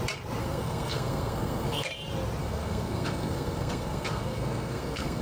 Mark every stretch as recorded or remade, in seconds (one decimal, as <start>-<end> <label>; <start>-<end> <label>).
0.0-0.4 recorded; 0.4-1.9 remade; 1.9-2.4 recorded; 2.4-5.2 remade